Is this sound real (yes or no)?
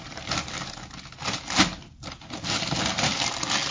yes